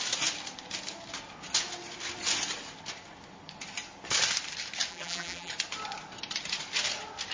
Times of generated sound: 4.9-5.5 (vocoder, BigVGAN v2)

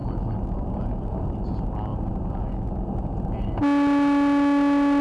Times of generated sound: none

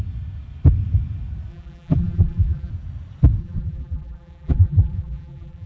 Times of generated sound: 1.5-2.7 (vocoder, BigVGAN v2); 3.4-5.7

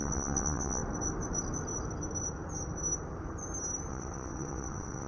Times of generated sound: 0.0-0.8 (vocoder, WaveNeXt); 3.9-5.1